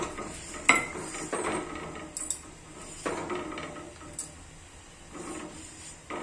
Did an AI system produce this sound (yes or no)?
no